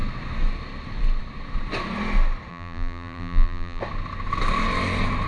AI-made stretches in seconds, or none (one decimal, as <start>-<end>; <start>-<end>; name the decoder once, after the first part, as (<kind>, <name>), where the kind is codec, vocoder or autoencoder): 2.5-3.8 (vocoder, BigVGAN v2)